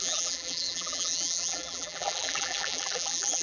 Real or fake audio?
fake